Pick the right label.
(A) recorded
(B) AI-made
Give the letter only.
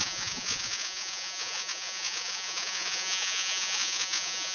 B